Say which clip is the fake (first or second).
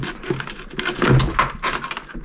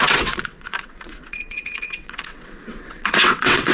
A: second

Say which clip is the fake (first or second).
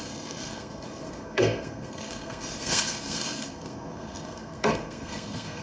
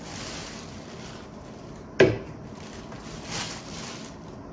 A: first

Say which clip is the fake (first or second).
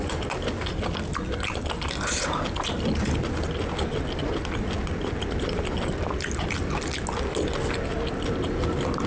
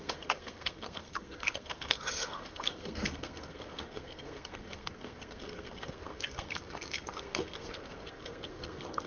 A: second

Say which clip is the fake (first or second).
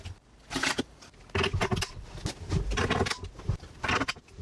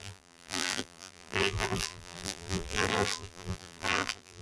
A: second